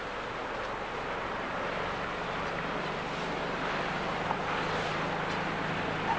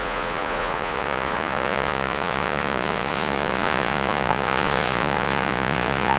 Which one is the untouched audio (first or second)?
first